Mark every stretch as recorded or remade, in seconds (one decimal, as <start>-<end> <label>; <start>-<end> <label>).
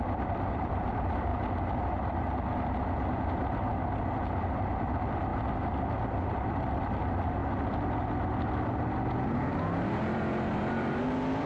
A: 0.0-1.3 remade; 1.3-4.5 recorded; 4.5-5.3 remade; 5.3-6.6 recorded; 6.6-7.4 remade; 7.4-9.5 recorded; 9.5-11.5 remade